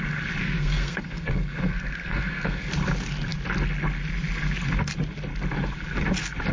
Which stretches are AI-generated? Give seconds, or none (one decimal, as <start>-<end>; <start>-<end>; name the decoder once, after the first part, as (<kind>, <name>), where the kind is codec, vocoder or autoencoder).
0.4-2.7 (codec, SNAC)